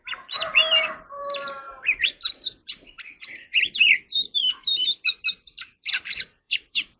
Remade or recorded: remade